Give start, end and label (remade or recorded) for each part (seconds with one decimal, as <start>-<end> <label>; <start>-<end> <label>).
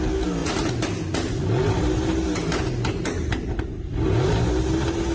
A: 0.0-5.1 recorded